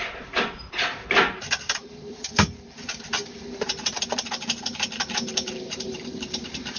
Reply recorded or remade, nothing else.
remade